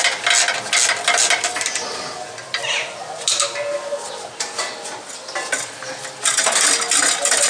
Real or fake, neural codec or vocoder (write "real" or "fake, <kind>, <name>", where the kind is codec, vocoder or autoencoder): real